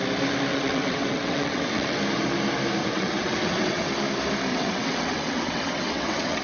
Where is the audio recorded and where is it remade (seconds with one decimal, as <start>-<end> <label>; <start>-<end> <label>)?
0.0-0.5 recorded; 0.5-2.0 remade; 2.0-2.8 recorded; 2.8-3.9 remade; 3.9-4.5 recorded; 4.5-6.4 remade